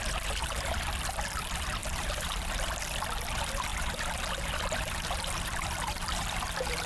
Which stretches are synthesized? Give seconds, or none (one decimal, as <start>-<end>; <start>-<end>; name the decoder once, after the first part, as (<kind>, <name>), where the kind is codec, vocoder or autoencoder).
1.8-2.8 (vocoder, BigVGAN v2); 3.7-6.4